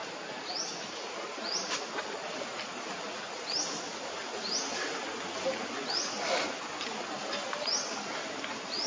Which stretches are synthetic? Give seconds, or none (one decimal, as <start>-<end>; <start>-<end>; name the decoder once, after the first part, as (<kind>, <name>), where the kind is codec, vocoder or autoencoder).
none